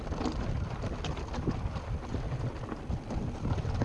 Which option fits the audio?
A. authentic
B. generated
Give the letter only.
A